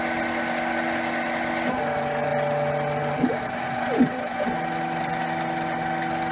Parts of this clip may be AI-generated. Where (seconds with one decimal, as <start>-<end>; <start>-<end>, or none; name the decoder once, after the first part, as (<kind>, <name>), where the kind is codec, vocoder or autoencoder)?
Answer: none